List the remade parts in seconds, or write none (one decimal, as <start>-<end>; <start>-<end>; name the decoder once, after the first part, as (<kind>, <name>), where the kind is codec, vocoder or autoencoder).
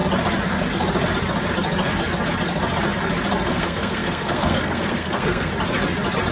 3.5-5.5 (codec, SNAC)